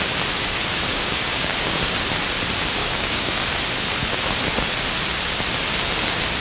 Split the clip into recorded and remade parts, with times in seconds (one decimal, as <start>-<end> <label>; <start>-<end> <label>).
0.0-0.9 recorded; 0.9-1.9 remade; 1.9-2.8 recorded; 2.8-3.4 remade; 3.4-6.4 recorded